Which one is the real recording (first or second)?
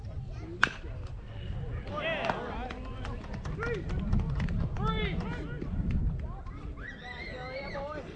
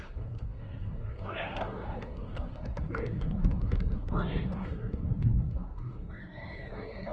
first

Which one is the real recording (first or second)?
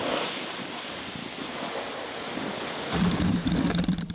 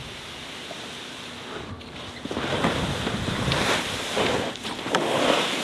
second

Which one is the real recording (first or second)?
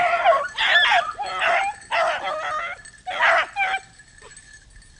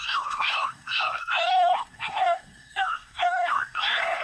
first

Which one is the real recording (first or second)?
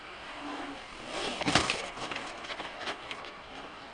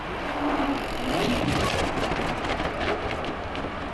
second